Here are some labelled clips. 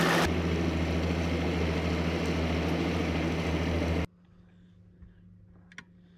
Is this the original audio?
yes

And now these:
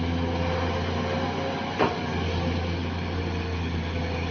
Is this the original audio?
yes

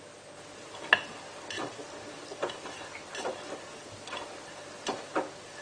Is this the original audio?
yes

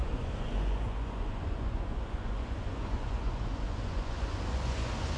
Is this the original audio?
no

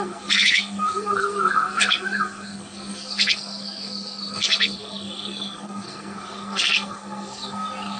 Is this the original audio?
no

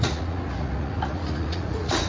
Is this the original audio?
no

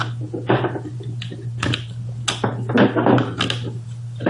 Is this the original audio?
yes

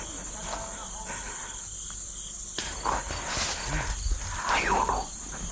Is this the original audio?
yes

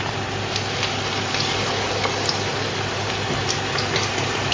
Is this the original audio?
no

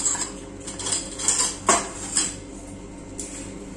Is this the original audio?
yes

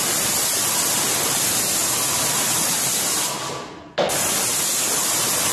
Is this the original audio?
yes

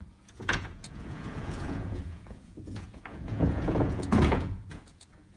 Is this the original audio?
no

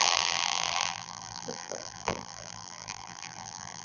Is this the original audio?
no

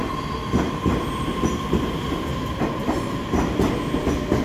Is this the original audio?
yes